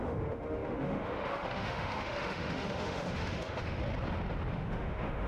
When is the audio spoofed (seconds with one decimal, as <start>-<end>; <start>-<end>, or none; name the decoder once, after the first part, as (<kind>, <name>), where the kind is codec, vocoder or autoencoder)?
0.0-3.8 (autoencoder, DAC-VAE); 4.5-5.3